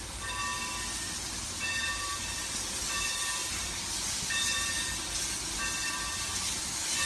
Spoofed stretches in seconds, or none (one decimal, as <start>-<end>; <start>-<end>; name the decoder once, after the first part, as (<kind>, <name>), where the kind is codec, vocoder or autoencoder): 0.0-0.4 (vocoder, BigVGAN v2); 2.0-7.1